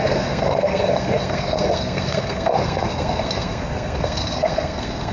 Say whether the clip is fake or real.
fake